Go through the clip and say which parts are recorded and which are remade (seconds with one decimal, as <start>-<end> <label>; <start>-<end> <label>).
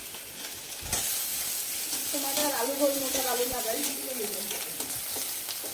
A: 0.0-1.3 recorded; 1.3-1.8 remade; 1.8-2.4 recorded; 2.4-4.4 remade; 4.4-5.7 recorded